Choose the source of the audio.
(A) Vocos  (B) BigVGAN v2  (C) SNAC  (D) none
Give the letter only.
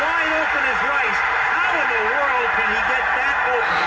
D